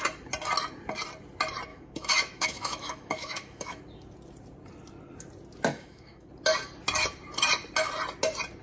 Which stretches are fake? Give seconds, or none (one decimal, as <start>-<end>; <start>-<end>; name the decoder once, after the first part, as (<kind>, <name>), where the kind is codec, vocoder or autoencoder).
1.7-3.8 (autoencoder, DAC-VAE); 5.7-6.3